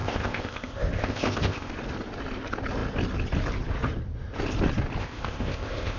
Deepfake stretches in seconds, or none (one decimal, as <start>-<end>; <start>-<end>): 0.0-1.7; 5.0-6.0